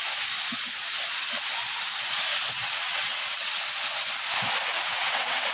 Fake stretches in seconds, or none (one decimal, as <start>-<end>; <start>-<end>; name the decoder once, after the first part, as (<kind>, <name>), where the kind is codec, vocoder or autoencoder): 2.6-3.6 (vocoder, WaveNeXt); 4.7-5.5